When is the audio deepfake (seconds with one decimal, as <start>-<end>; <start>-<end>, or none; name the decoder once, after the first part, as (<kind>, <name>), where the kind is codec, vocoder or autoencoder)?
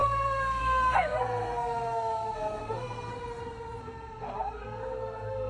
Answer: 0.0-3.1 (codec, SNAC); 3.8-5.5